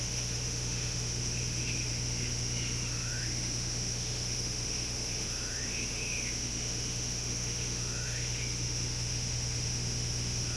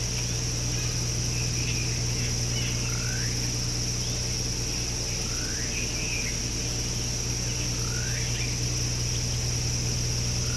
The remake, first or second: first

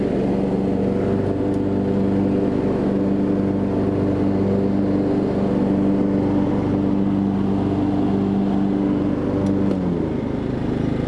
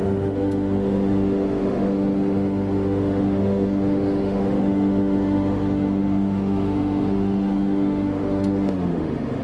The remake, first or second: second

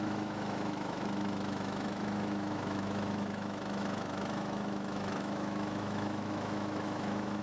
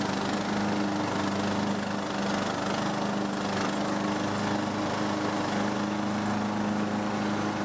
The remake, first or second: first